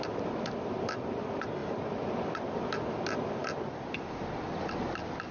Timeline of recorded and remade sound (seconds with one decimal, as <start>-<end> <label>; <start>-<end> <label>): 0.0-5.3 recorded